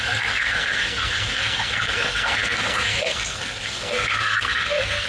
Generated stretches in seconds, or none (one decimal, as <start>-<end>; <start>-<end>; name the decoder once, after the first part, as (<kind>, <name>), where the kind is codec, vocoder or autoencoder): 0.0-5.1 (codec, SNAC)